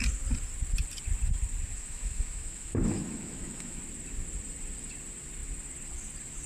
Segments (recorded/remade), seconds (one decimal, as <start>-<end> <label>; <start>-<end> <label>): 0.0-1.7 recorded; 1.7-3.8 remade; 3.8-6.5 recorded